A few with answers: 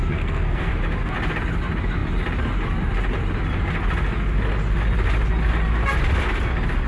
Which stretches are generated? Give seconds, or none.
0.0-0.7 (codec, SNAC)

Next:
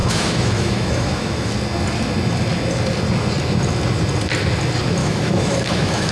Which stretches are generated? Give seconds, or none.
0.0-1.5 (autoencoder, DAC-VAE); 5.0-6.1

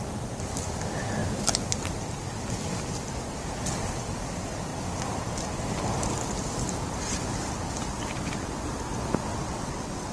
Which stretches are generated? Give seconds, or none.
9.3-10.1 (vocoder, WaveNeXt)

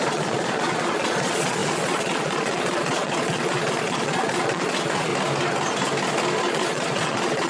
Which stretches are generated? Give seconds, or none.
0.0-5.1 (vocoder, Vocos); 6.5-7.5

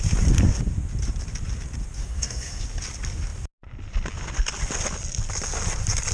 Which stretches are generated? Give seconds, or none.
2.0-2.6 (codec, SNAC)

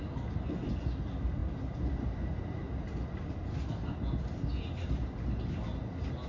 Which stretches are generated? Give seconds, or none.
none

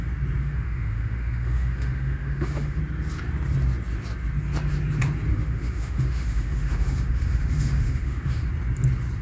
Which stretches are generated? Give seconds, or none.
0.4-2.8 (autoencoder, DAC-VAE); 5.3-8.5